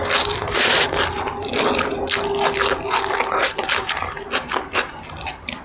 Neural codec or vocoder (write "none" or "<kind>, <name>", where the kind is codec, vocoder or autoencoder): none